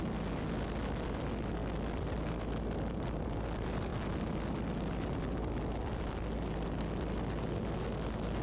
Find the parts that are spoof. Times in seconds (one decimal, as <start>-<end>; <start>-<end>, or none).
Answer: none